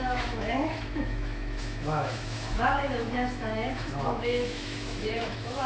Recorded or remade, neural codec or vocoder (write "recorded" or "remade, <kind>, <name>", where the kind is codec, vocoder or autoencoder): remade, autoencoder, DAC-VAE